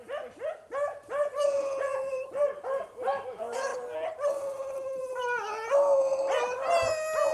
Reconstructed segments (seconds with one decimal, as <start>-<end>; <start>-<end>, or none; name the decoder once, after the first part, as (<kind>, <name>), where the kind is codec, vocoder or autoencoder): 0.9-2.4 (vocoder, Vocos)